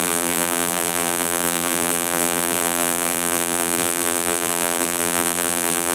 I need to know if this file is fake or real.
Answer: fake